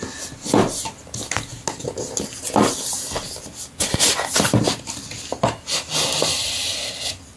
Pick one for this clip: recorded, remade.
recorded